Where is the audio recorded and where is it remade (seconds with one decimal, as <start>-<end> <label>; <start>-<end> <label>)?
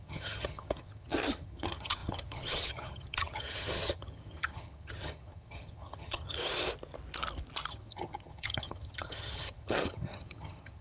0.0-6.4 remade; 6.4-7.7 recorded; 7.7-10.8 remade